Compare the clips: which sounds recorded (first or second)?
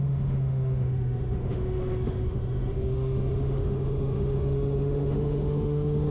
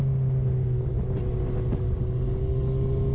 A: second